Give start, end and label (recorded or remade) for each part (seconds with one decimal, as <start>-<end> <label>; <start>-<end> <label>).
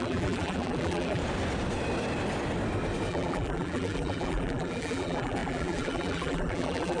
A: 0.0-1.2 remade; 1.2-3.1 recorded; 3.1-7.0 remade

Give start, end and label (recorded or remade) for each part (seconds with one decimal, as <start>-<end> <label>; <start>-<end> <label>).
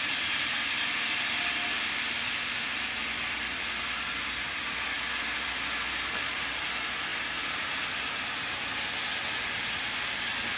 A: 0.0-7.1 remade; 7.1-7.9 recorded; 7.9-10.6 remade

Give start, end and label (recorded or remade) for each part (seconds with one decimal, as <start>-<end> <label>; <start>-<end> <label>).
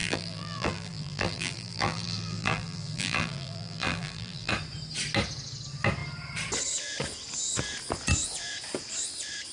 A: 0.0-4.5 remade; 4.5-9.5 recorded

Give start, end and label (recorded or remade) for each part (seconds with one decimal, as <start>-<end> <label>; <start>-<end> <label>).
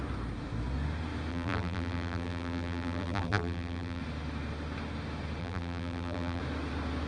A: 0.0-1.3 recorded; 1.3-4.0 remade; 4.0-5.4 recorded; 5.4-6.4 remade; 6.4-7.1 recorded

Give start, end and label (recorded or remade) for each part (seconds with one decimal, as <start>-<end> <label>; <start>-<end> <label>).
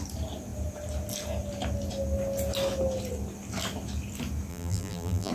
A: 0.0-4.5 recorded; 4.5-5.3 remade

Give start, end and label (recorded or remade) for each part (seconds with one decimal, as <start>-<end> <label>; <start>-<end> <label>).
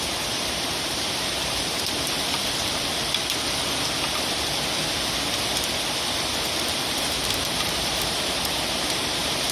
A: 0.0-2.4 remade; 2.4-6.2 recorded; 6.2-9.5 remade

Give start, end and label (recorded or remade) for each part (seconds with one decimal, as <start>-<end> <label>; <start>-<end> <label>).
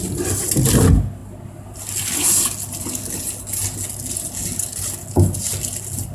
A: 0.0-6.1 recorded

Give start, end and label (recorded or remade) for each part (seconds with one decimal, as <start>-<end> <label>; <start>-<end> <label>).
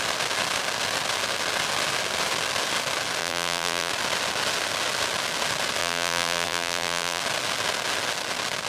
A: 0.0-3.2 recorded; 3.2-3.9 remade; 3.9-5.8 recorded; 5.8-7.2 remade; 7.2-8.7 recorded